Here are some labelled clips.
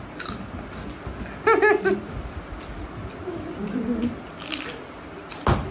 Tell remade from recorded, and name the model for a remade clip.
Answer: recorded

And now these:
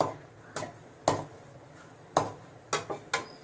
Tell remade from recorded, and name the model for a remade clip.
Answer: recorded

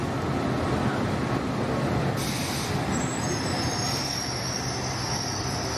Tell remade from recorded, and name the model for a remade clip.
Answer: recorded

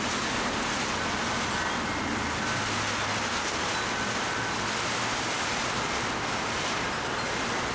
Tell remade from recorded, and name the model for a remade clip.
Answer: recorded